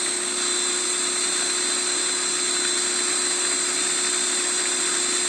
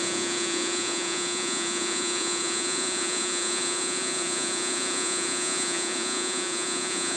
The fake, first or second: second